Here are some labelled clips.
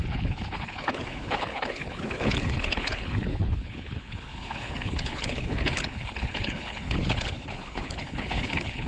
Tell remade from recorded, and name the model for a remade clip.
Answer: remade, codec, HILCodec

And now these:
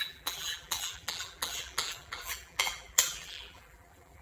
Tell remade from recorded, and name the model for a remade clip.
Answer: remade, vocoder, BigVGAN v2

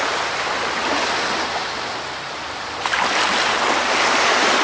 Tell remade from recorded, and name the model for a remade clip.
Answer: recorded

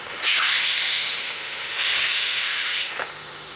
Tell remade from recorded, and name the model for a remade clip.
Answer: remade, autoencoder, DAC-VAE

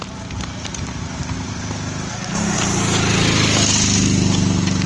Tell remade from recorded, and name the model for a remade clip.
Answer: recorded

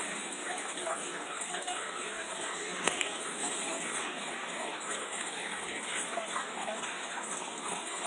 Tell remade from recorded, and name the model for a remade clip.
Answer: remade, codec, DAC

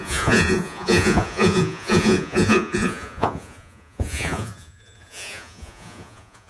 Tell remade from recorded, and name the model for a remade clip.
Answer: remade, vocoder, Vocos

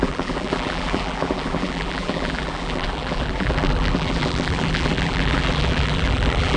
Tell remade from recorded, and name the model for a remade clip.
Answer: remade, vocoder, BigVGAN v2